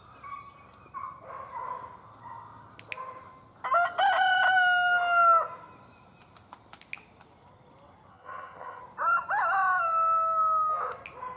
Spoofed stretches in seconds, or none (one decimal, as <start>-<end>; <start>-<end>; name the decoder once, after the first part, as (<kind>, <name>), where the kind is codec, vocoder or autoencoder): 8.1-8.8 (vocoder, HiFi-GAN)